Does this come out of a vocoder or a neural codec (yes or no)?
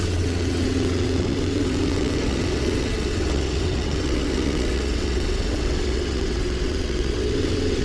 yes